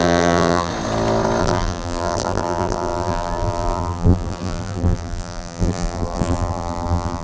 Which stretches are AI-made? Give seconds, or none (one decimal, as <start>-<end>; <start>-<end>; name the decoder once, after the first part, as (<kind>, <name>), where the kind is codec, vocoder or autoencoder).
0.0-0.7 (vocoder, BigVGAN v2); 1.4-7.2